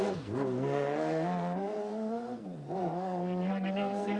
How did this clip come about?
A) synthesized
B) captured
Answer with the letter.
A